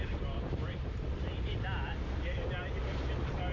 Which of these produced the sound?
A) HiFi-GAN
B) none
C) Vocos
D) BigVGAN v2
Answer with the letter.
D